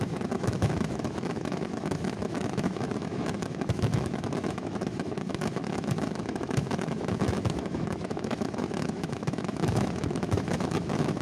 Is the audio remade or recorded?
remade